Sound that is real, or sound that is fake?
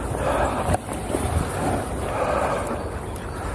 real